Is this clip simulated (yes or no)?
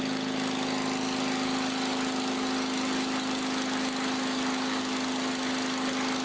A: no